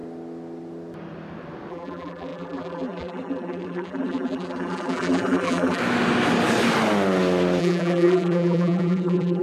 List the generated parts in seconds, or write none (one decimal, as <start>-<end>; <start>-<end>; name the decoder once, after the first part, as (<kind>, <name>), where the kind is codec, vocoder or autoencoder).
1.7-5.8 (vocoder, BigVGAN v2); 7.6-9.4